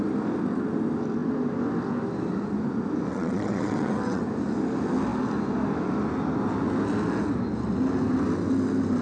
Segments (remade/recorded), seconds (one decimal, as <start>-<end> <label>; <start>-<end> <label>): 0.0-3.1 recorded; 3.1-4.2 remade; 4.2-9.0 recorded